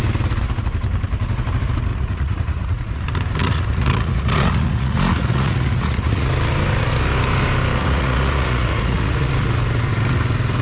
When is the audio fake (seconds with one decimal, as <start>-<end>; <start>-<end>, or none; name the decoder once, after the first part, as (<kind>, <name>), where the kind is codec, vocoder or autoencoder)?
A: 1.9-3.0 (vocoder, Vocos); 3.4-6.3; 7.8-9.3